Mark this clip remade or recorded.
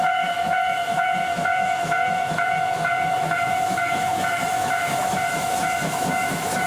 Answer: remade